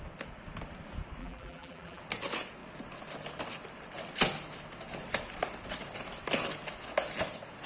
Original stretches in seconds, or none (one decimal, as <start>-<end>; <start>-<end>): 0.0-1.2; 2.0-7.7